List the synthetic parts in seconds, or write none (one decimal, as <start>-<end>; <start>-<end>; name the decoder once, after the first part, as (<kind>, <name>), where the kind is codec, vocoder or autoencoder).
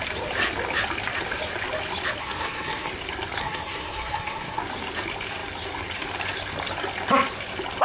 2.2-2.9 (codec, SNAC); 3.4-4.6